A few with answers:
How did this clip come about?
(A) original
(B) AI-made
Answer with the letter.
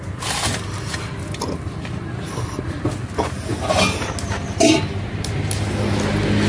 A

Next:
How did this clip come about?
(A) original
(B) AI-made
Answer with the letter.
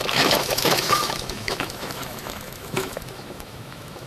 B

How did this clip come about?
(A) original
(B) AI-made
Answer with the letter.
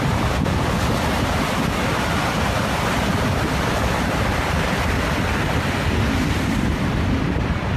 A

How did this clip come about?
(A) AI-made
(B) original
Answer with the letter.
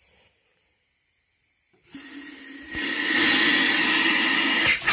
B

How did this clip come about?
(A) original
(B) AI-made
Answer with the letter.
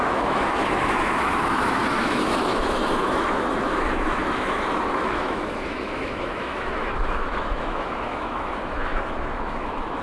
B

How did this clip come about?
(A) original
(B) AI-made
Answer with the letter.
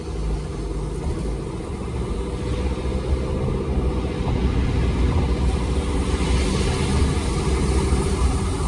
A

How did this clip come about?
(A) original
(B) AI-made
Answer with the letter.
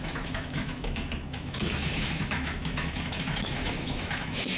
B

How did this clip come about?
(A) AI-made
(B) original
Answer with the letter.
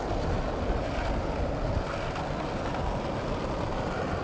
B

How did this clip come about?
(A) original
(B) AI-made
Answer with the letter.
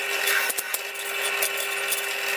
A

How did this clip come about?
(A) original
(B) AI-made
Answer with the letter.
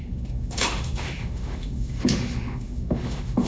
B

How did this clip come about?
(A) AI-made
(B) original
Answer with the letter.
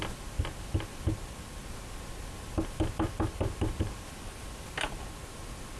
B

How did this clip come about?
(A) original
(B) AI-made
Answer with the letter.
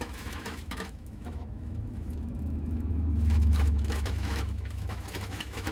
B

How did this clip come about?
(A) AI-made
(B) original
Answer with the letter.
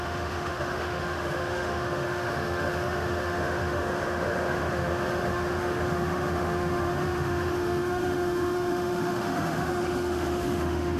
A